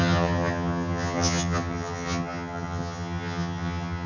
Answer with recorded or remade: remade